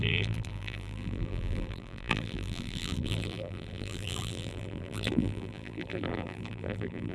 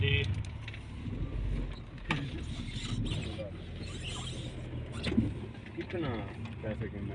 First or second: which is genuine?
second